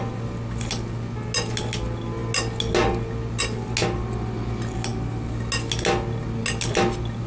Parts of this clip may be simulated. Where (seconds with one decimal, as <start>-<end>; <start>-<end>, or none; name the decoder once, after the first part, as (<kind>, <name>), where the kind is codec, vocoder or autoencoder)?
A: none